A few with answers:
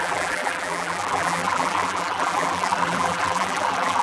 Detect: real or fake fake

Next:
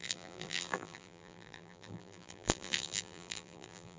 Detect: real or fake fake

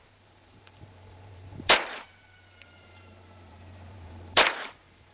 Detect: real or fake fake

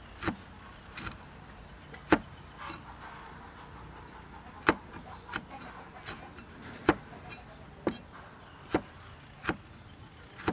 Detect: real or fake real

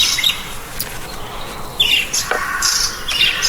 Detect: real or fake real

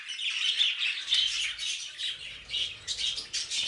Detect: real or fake real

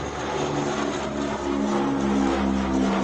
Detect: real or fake real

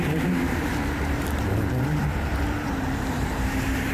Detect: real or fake fake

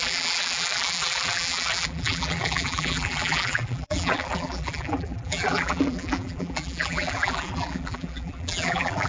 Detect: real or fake fake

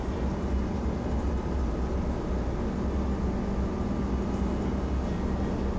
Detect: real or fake real